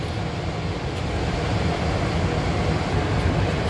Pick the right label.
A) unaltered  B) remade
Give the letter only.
A